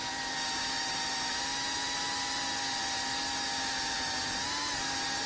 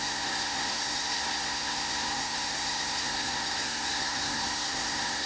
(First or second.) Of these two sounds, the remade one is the second